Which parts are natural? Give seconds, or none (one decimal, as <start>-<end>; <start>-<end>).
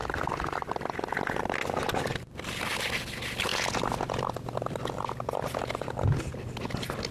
0.0-7.1